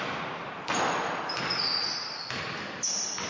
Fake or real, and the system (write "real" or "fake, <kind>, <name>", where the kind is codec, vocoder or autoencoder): fake, vocoder, BigVGAN v2